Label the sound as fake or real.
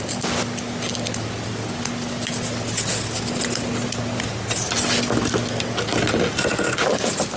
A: real